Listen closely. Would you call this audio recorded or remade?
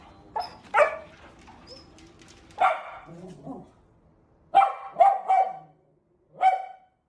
recorded